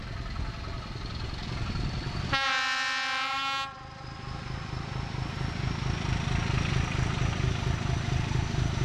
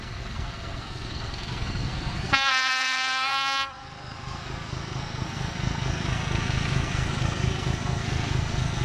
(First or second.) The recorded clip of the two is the first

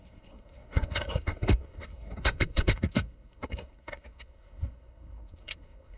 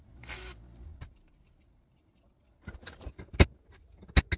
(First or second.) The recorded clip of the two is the second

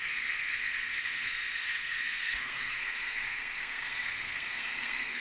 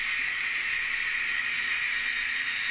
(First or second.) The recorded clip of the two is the second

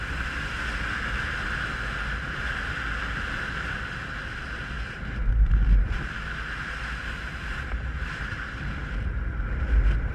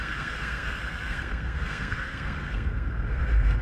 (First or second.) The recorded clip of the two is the first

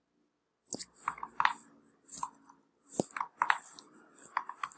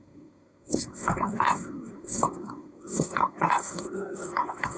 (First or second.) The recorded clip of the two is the first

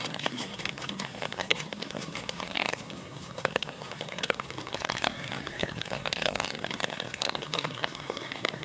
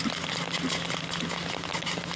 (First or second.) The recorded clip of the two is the second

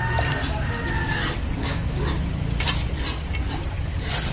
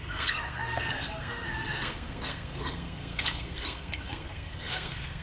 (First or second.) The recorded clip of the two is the first